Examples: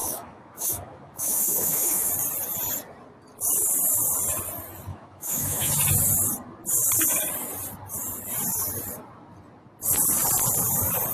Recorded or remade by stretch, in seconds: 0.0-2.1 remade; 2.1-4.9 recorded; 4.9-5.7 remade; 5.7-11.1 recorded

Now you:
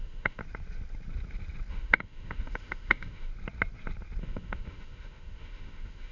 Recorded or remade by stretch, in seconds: 0.0-0.4 remade; 0.4-1.7 recorded; 1.7-3.3 remade; 3.3-4.2 recorded; 4.2-6.1 remade